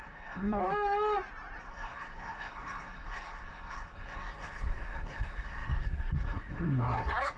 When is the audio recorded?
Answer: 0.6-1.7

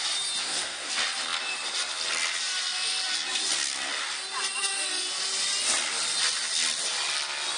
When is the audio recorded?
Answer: 0.0-0.4; 0.9-7.6

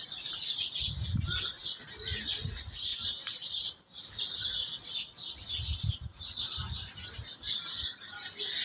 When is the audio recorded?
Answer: 0.0-8.6

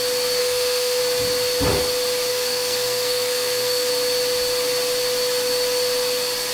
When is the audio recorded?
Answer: 0.0-0.4; 1.0-2.3; 3.9-6.5

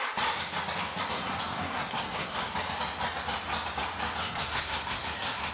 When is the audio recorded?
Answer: 0.0-1.1; 2.5-4.2

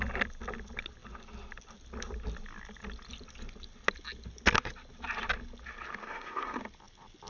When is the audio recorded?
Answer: 0.0-6.0; 6.6-7.3

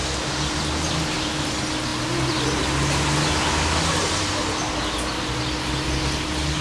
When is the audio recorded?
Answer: 0.0-6.6

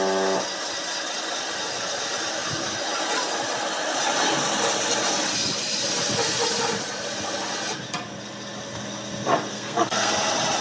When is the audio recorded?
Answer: 0.0-9.5; 10.1-10.6